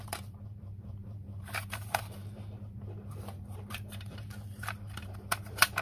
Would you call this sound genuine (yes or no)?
no